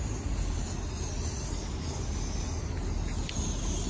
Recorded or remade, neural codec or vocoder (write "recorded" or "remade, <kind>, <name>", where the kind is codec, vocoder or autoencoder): recorded